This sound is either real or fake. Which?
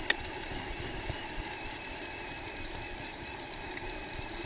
fake